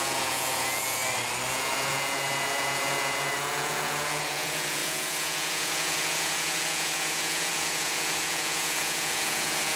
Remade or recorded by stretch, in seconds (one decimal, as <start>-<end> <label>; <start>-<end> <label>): 0.0-1.0 remade; 1.0-1.5 recorded; 1.5-9.8 remade